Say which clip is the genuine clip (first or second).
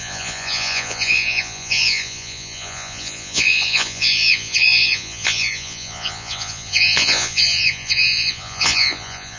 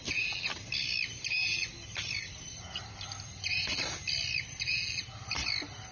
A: second